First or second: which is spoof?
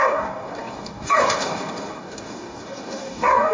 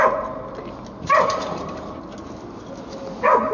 first